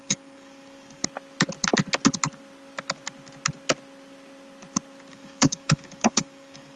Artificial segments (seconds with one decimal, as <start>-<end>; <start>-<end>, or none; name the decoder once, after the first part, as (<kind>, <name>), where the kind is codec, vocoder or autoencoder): 0.0-1.0 (codec, DAC); 5.1-6.8